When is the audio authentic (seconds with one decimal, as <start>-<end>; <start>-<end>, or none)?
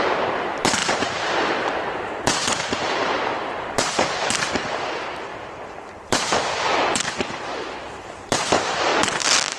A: 8.9-9.6